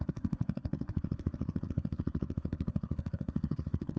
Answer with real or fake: fake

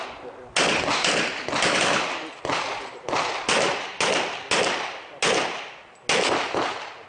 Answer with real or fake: real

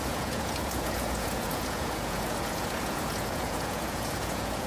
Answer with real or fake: fake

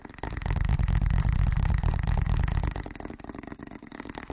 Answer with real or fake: real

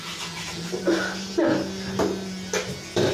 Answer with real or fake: real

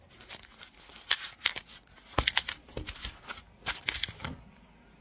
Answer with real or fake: real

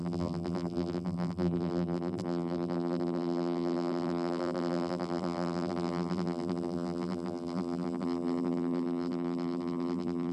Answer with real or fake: fake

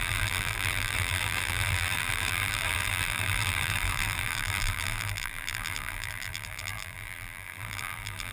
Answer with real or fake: fake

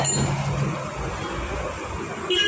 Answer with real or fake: real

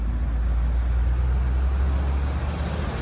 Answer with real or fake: real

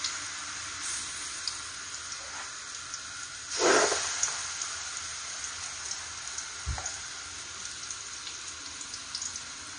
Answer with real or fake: real